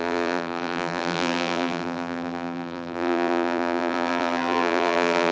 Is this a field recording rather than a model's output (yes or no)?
no